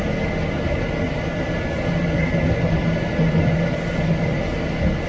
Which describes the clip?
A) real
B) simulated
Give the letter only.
A